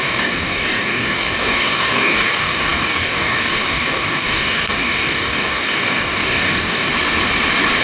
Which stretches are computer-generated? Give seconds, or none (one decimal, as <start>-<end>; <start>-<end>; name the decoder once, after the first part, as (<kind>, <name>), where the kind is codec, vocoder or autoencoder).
0.0-6.9 (codec, DAC)